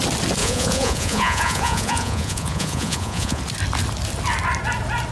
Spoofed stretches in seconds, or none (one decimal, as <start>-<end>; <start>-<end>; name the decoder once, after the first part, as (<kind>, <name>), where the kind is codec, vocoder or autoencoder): 0.4-3.4 (vocoder, Vocos)